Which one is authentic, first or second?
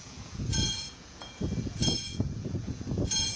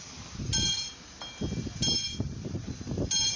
second